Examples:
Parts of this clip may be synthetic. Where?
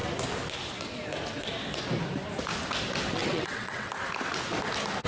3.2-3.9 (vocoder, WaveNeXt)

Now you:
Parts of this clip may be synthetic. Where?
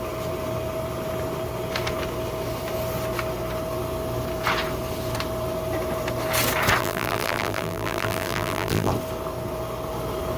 6.8-8.9 (vocoder, BigVGAN v2)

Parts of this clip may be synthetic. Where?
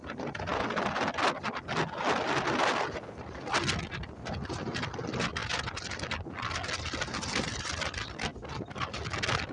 none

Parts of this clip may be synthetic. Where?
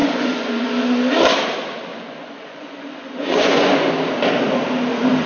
0.0-0.7 (vocoder, Vocos); 1.9-3.9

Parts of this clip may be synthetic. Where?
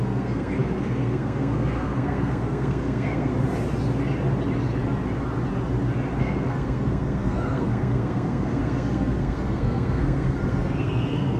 0.0-3.3 (codec, SNAC); 6.2-11.4